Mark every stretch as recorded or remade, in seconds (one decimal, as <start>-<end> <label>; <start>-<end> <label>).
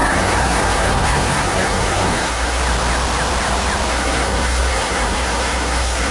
0.0-2.6 remade; 2.6-3.9 recorded; 3.9-6.1 remade